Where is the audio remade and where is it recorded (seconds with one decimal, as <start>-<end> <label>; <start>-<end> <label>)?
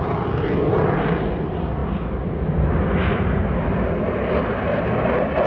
0.0-5.5 recorded